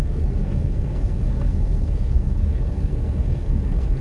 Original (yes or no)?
no